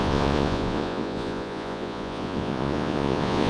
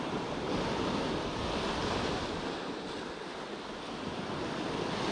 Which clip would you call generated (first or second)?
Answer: first